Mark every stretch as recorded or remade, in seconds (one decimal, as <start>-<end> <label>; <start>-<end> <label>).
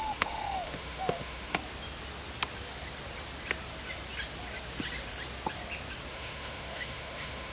0.0-1.6 remade; 1.6-6.1 recorded; 6.1-7.5 remade